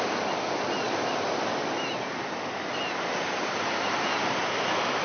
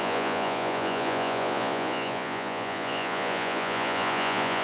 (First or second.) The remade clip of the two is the second